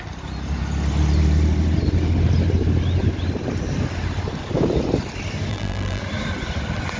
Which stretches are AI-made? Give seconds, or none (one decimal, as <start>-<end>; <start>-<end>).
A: 5.5-6.0